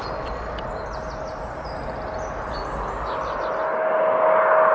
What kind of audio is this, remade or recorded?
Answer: recorded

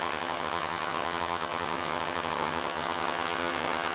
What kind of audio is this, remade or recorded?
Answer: remade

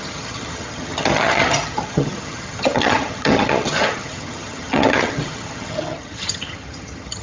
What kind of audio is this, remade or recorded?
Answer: remade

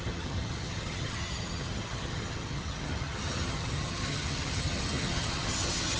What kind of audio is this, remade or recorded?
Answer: remade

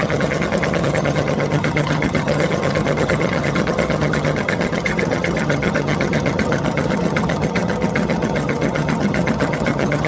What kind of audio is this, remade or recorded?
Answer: remade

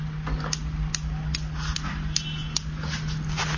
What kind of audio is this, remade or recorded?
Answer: recorded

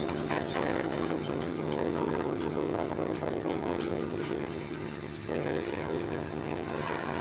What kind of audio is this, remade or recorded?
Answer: remade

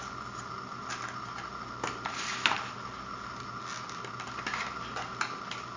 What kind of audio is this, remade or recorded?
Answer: recorded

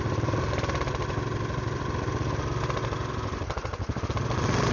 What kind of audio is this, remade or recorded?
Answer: recorded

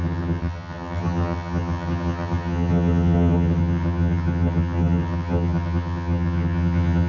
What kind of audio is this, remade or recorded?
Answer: remade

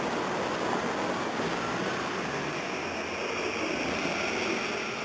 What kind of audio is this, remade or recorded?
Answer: recorded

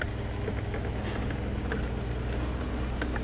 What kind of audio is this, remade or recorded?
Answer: recorded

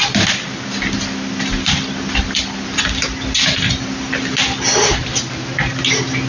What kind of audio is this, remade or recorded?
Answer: recorded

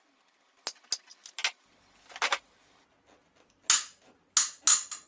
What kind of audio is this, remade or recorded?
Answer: recorded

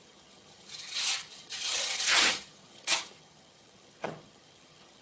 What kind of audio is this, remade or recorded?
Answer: remade